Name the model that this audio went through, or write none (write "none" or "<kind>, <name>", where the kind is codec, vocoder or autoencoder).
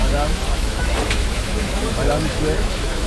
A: autoencoder, DAC-VAE